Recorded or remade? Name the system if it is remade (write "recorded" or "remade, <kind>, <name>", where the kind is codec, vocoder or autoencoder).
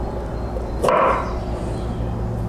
recorded